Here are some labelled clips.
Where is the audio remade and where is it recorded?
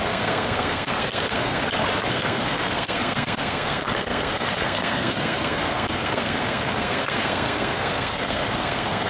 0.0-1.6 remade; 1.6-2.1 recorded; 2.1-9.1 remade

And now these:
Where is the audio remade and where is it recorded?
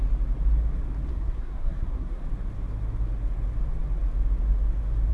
0.0-1.1 recorded; 1.1-2.2 remade; 2.2-5.1 recorded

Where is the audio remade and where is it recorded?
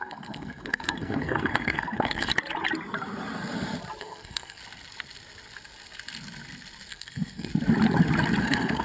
0.0-2.3 remade; 2.3-4.0 recorded; 4.0-4.6 remade; 4.6-6.9 recorded; 6.9-7.5 remade; 7.5-8.4 recorded; 8.4-8.8 remade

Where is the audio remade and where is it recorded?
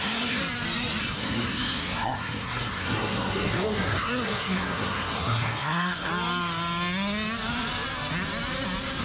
0.0-0.4 remade; 0.4-1.0 recorded; 1.0-6.1 remade; 6.1-9.0 recorded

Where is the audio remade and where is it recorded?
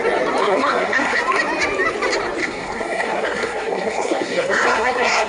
0.0-0.4 recorded; 0.4-1.2 remade; 1.2-2.4 recorded; 2.4-5.3 remade